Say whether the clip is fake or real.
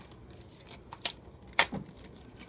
real